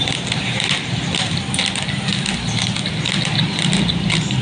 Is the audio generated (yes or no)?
no